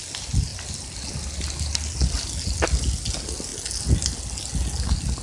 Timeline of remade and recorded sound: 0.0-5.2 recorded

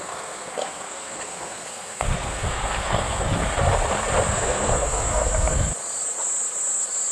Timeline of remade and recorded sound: 0.0-3.3 remade; 3.3-4.3 recorded; 4.3-5.7 remade; 5.7-7.1 recorded

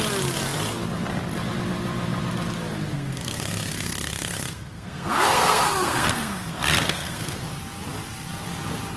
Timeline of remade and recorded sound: 0.0-2.9 recorded; 2.9-7.4 remade; 7.4-9.0 recorded

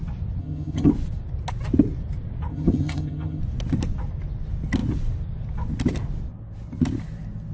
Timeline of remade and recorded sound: 0.0-0.4 recorded; 0.4-0.9 remade; 0.9-2.5 recorded; 2.5-3.4 remade; 3.4-7.5 recorded